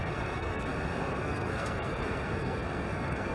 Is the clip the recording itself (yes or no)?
no